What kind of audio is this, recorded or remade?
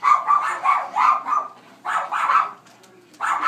remade